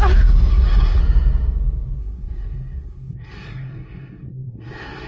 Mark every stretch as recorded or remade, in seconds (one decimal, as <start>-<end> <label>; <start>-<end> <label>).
0.0-0.5 recorded; 0.5-1.0 remade; 1.0-2.0 recorded; 2.0-5.1 remade